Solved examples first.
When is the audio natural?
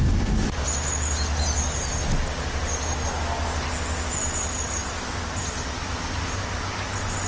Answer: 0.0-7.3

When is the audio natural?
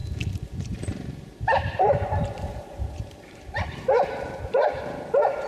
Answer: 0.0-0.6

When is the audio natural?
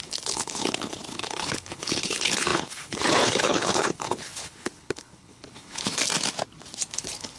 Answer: 6.0-6.9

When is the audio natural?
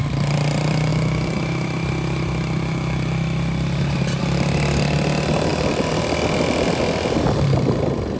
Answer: 0.0-8.2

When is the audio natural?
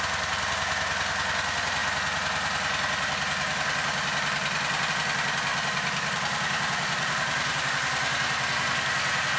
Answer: 0.0-9.4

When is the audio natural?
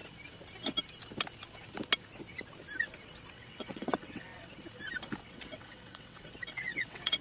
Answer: 0.0-3.3; 4.3-5.3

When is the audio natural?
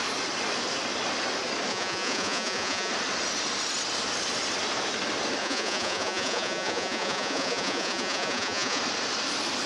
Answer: 0.0-1.7; 2.9-5.4; 8.8-9.7